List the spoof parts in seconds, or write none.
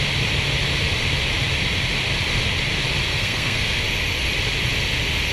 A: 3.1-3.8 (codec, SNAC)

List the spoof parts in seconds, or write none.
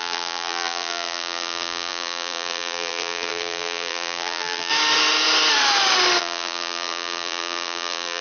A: 0.0-4.7 (vocoder, BigVGAN v2); 6.2-8.2